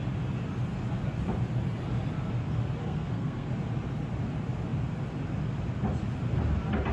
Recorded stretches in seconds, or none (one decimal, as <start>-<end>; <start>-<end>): 0.0-2.8; 3.5-6.9